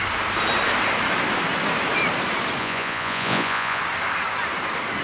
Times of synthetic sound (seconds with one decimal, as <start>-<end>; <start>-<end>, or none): 2.6-3.8